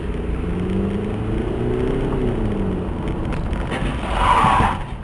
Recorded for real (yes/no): yes